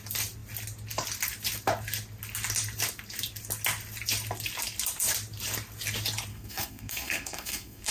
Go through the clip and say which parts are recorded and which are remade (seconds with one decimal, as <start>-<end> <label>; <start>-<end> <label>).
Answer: 0.0-6.3 recorded; 6.3-7.9 remade